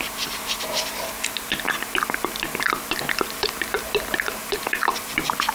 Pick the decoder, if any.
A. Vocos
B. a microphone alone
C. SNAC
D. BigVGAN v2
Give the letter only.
B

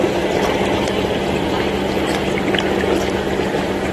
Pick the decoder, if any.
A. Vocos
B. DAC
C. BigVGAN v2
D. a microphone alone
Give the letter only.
D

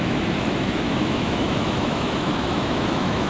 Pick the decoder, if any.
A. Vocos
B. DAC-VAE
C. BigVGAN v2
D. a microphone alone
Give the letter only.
B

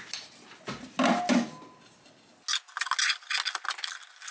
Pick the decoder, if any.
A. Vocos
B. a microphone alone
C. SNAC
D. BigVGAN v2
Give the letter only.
B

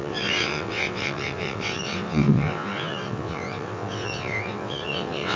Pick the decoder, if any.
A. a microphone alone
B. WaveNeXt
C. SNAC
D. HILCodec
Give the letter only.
B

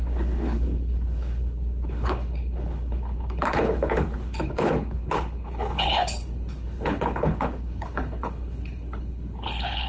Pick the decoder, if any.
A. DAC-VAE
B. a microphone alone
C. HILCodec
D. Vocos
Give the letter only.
C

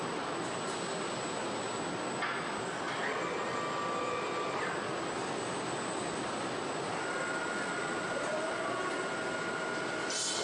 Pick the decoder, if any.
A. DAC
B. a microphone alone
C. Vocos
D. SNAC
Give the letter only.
B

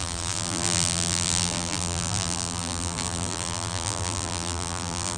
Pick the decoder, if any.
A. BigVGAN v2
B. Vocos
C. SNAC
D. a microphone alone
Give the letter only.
A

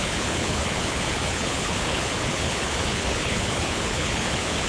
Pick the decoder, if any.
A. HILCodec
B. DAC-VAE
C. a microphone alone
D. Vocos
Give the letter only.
A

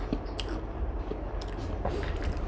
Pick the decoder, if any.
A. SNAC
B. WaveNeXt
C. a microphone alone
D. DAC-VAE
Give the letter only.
C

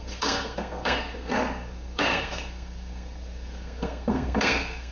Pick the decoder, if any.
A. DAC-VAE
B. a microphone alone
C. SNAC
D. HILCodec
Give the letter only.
C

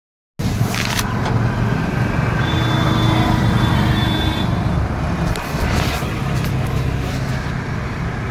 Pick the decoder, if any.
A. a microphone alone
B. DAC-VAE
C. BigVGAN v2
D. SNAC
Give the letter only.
A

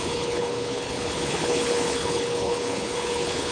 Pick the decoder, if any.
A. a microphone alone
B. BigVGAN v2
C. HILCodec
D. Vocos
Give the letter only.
C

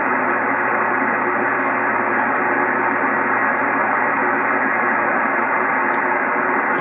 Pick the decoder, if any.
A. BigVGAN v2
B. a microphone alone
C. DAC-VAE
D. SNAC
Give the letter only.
A